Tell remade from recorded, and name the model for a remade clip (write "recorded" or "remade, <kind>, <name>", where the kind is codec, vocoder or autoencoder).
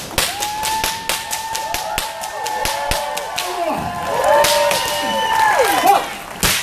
recorded